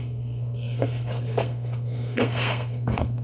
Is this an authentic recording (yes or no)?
no